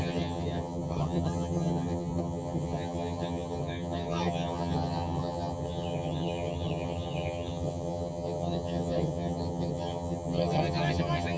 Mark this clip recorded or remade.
remade